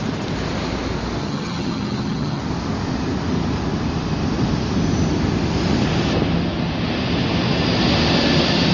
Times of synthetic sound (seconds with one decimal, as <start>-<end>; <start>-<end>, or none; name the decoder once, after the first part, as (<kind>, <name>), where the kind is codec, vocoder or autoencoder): 1.2-2.4 (vocoder, HiFi-GAN)